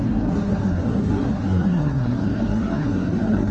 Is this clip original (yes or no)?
no